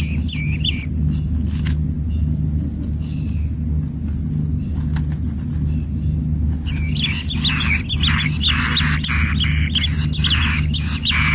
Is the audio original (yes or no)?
yes